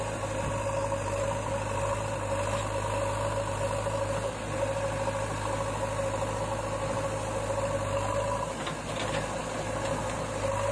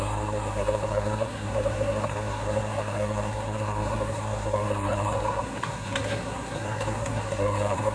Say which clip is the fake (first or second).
second